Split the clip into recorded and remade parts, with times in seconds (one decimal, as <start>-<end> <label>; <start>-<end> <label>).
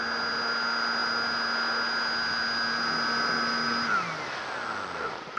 0.0-5.4 recorded